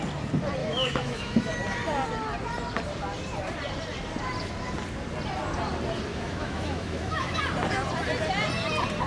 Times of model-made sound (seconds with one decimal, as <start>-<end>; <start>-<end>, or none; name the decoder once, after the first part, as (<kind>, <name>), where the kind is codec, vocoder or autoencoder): 0.6-1.5 (autoencoder, DAC-VAE); 6.1-7.4